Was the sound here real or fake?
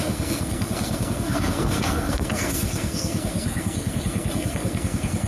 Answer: fake